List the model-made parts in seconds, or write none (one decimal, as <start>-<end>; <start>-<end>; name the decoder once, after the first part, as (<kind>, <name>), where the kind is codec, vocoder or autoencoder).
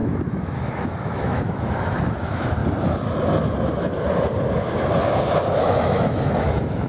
0.0-2.6 (autoencoder, DAC-VAE); 5.5-6.9